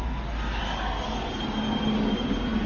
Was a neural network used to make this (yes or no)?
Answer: no